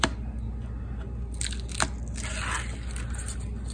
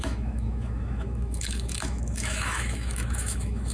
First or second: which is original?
first